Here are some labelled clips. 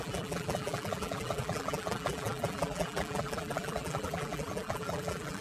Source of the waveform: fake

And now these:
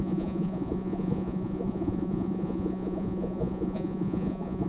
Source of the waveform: fake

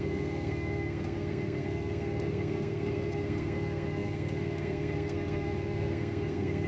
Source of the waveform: fake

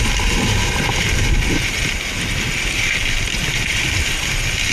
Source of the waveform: real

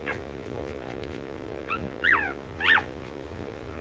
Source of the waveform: fake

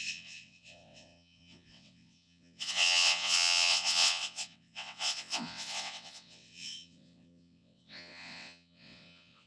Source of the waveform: fake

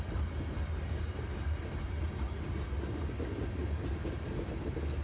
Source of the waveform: real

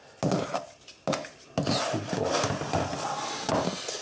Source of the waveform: real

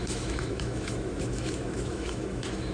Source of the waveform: fake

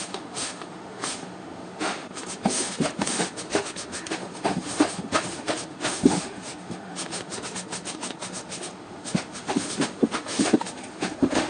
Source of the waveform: fake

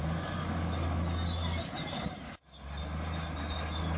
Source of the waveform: real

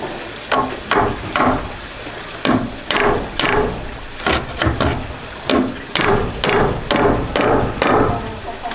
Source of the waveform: real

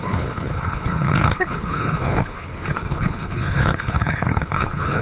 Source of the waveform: fake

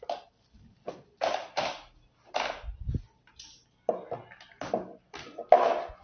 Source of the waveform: real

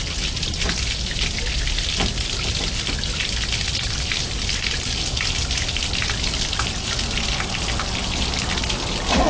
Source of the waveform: real